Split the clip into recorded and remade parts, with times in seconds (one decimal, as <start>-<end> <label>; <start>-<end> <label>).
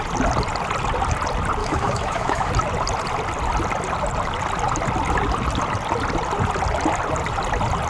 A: 0.0-1.6 recorded; 1.6-2.5 remade; 2.5-7.9 recorded